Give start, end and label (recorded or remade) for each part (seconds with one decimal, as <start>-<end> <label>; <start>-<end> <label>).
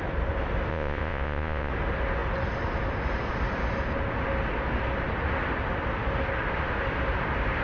0.0-0.7 recorded; 0.7-1.7 remade; 1.7-7.6 recorded